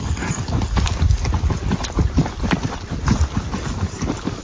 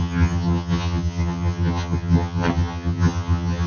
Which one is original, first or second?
first